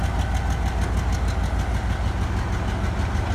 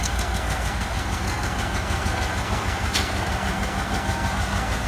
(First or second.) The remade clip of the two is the second